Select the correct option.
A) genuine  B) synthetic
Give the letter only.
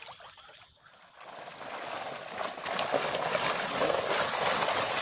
A